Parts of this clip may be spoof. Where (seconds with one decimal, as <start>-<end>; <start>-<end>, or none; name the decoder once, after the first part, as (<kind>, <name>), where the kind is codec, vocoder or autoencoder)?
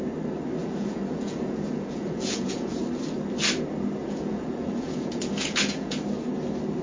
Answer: 0.6-2.8 (vocoder, Vocos); 4.0-6.0